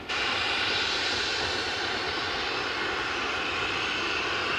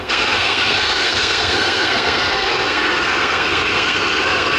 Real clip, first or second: first